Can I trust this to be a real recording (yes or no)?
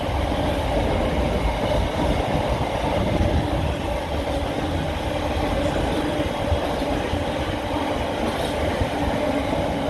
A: yes